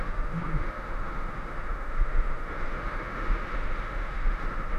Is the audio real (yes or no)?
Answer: no